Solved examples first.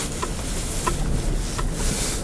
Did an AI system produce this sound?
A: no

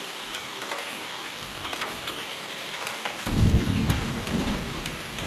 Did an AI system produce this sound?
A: yes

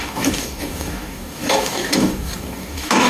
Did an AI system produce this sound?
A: yes